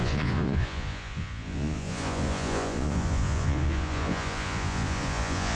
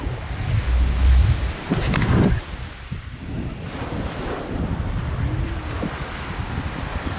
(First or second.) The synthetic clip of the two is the first